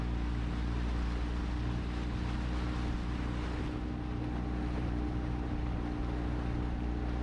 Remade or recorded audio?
recorded